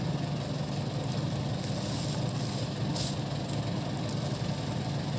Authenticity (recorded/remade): recorded